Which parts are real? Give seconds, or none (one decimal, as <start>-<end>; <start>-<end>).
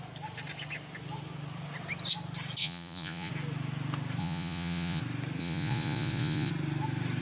0.0-2.6; 3.3-4.2; 5.0-5.4; 6.5-7.2